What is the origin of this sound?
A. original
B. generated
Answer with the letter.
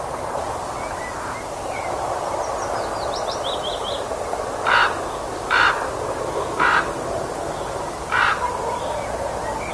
A